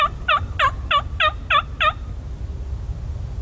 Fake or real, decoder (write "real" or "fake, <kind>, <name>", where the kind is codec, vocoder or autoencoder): real